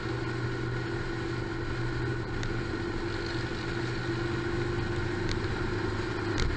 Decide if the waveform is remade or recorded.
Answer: recorded